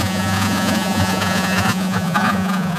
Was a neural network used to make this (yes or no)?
yes